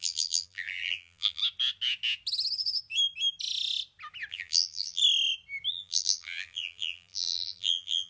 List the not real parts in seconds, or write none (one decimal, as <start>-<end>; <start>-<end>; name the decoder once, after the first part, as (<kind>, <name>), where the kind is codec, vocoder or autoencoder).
0.0-1.4 (vocoder, BigVGAN v2); 4.3-5.0; 5.7-8.1